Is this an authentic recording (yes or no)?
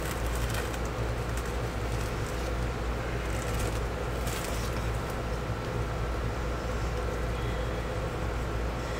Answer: yes